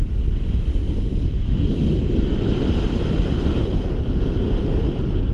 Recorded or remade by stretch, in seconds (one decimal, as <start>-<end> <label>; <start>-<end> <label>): 0.0-0.8 recorded; 0.8-4.0 remade; 4.0-5.3 recorded